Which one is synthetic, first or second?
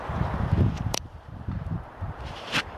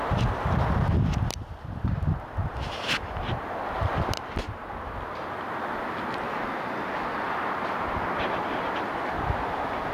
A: first